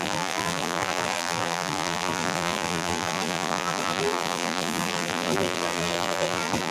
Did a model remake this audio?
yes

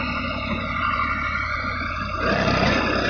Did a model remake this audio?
yes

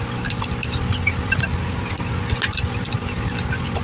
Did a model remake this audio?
no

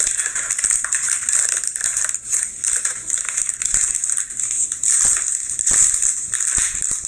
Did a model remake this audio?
no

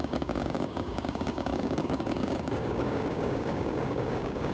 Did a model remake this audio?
yes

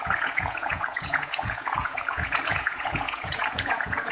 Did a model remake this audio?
yes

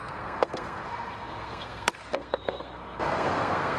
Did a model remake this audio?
yes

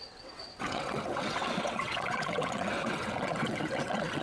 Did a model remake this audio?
yes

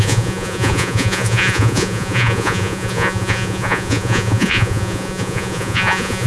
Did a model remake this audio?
yes